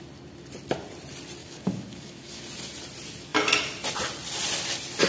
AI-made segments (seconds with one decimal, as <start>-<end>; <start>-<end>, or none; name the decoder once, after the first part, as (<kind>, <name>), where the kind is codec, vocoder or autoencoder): 1.4-2.4 (codec, DAC)

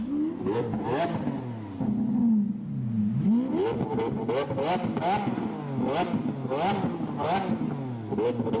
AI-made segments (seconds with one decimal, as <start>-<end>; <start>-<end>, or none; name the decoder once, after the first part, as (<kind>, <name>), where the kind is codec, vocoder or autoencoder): none

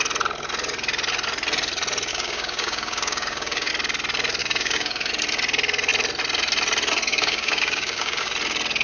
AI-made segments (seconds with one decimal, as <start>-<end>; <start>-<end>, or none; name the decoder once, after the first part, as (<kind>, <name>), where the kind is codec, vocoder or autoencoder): 2.1-3.7 (codec, DAC); 4.4-5.1; 7.1-8.3